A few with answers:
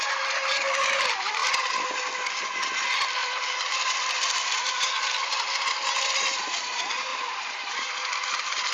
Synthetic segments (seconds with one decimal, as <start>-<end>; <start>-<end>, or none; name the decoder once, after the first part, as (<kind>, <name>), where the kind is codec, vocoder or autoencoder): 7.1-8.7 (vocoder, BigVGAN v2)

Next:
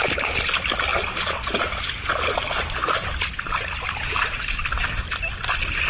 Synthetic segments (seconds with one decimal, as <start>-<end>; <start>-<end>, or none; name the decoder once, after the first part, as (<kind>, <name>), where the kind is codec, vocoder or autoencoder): 2.1-4.6 (vocoder, BigVGAN v2)

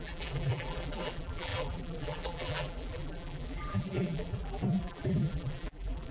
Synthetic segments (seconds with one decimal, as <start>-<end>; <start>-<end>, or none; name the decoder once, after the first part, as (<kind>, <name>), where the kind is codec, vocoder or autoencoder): 0.0-6.1 (vocoder, BigVGAN v2)

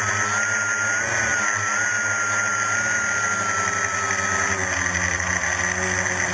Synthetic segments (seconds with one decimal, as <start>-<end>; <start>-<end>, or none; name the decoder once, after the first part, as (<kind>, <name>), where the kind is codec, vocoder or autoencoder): none

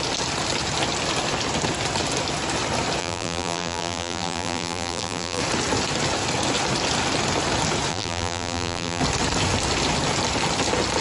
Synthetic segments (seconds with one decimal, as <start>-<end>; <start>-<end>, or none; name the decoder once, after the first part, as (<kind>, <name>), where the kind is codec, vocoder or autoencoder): 3.0-5.4 (vocoder, BigVGAN v2); 7.9-9.0